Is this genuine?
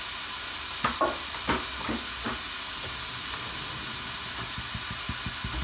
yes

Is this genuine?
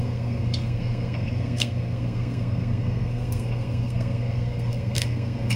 no